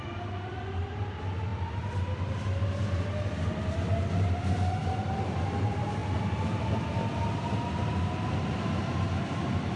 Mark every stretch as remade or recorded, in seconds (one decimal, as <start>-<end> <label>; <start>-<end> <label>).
0.0-9.8 recorded